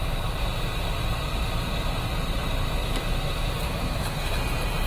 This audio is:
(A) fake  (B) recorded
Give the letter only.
A